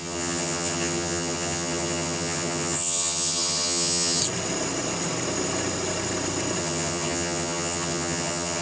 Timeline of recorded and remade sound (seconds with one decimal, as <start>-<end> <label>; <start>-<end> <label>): 0.0-4.2 remade; 4.2-6.6 recorded; 6.6-8.6 remade